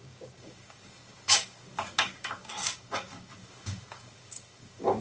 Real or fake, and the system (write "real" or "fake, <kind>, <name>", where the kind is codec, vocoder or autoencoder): fake, codec, DAC